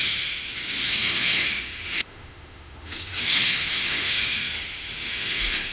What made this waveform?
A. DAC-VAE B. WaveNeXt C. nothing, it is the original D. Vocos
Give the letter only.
A